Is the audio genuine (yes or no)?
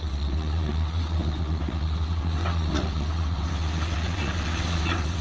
no